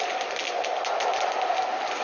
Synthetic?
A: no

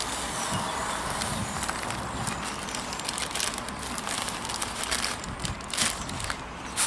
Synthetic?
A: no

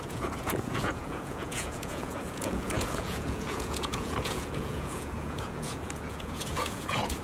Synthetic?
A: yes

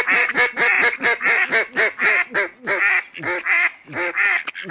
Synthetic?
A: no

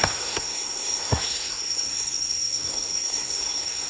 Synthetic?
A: yes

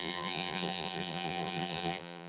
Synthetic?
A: yes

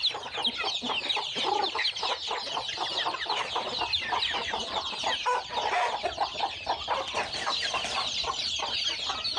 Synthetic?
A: no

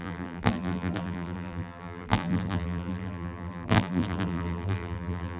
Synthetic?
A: yes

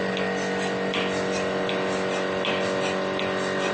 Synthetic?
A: no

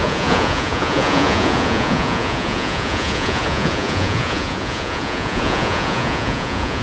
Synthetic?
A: yes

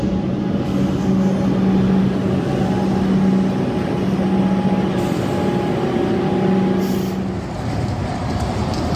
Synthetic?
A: no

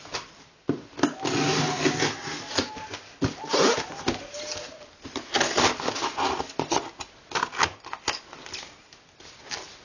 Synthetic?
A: no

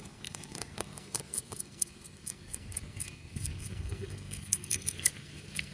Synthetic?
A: yes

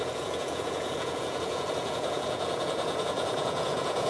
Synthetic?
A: yes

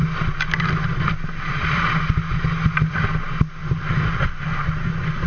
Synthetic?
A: no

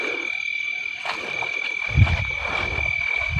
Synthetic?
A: no